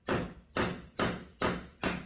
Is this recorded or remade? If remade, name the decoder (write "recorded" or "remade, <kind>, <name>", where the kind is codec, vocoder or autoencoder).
recorded